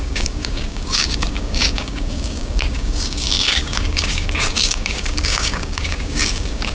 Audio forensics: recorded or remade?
remade